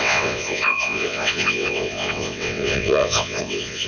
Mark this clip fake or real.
fake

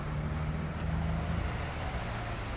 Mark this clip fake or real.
real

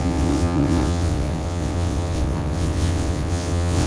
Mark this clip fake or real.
fake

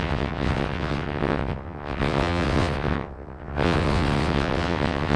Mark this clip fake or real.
fake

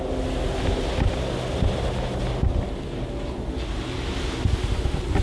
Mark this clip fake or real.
real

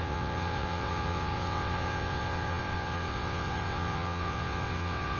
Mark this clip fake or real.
fake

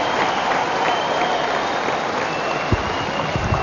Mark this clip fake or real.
real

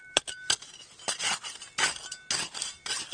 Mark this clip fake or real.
real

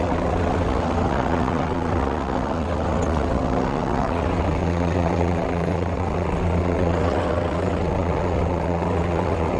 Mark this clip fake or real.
fake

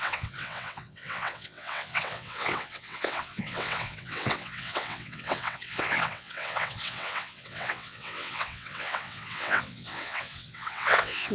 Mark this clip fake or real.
fake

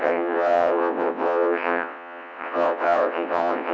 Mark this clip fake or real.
fake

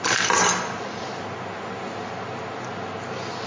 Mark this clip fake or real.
real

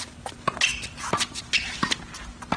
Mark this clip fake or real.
real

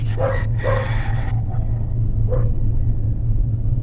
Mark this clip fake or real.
fake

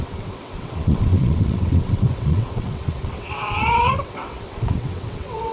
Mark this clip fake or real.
fake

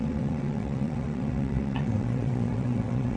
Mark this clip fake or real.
fake